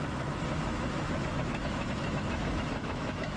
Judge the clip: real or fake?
fake